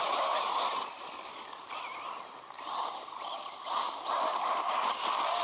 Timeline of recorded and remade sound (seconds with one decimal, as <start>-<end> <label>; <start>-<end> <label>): 0.0-1.1 remade; 1.1-5.4 recorded